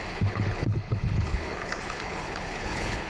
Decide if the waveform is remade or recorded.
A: remade